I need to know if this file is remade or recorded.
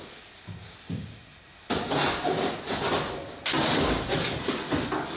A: recorded